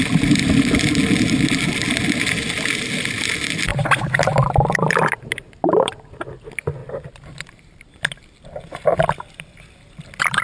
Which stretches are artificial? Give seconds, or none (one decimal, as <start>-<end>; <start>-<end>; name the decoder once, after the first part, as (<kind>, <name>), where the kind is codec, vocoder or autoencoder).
none